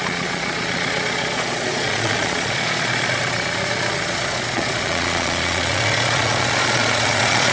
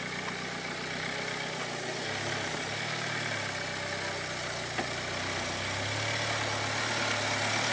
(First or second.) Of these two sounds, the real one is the second